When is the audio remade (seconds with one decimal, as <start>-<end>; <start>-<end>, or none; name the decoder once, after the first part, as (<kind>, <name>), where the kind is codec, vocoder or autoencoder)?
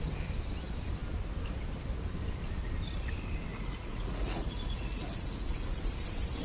3.5-5.8 (vocoder, Vocos)